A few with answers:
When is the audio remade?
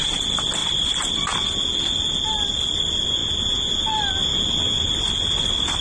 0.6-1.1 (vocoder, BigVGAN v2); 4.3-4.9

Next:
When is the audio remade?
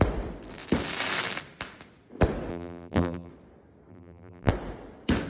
2.5-3.3 (vocoder, BigVGAN v2); 3.9-4.5